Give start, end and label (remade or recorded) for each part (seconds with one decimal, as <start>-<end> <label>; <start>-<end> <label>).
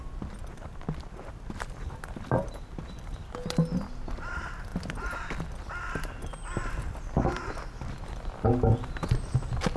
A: 0.0-9.8 recorded